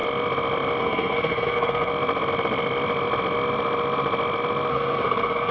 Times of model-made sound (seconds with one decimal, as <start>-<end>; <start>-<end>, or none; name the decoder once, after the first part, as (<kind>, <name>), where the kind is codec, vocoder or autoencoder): 0.8-1.9 (codec, SNAC); 4.7-5.5